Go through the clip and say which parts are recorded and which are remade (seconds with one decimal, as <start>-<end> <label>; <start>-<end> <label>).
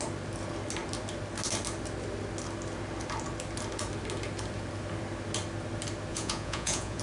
0.0-6.1 recorded; 6.1-7.0 remade